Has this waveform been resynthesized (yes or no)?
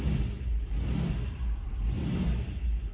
no